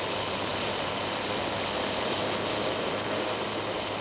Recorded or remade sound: recorded